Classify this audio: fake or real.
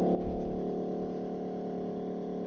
real